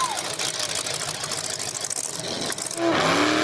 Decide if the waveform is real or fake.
real